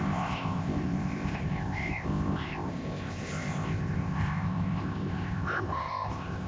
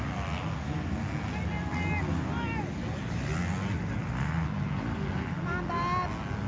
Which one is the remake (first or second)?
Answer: first